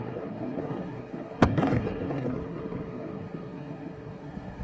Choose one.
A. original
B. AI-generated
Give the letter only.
B